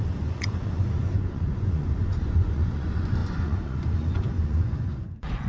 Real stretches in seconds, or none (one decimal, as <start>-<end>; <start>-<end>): none